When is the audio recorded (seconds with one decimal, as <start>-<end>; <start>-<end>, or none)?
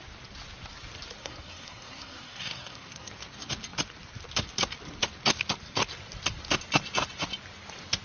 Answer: 0.0-1.2; 3.1-8.0